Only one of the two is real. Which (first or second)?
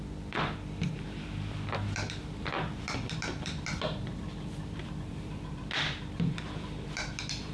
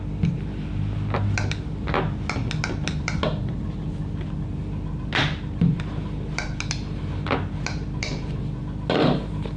second